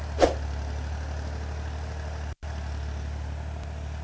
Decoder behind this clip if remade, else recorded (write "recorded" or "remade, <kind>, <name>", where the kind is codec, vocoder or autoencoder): recorded